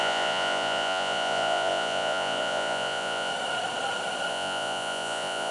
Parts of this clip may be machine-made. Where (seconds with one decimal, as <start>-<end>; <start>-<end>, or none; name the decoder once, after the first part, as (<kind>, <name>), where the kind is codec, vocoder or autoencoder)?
0.0-3.3 (vocoder, Vocos); 4.3-5.5